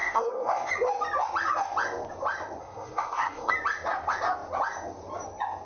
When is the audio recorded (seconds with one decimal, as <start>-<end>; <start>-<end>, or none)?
0.7-2.6; 3.5-5.7